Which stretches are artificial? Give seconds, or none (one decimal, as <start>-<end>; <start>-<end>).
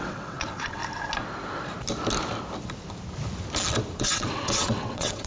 0.0-0.8; 4.0-5.3